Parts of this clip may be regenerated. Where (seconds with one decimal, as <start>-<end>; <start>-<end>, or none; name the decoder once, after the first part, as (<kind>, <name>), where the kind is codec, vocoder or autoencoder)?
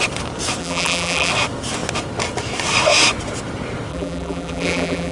0.6-1.3 (vocoder, BigVGAN v2); 3.9-5.1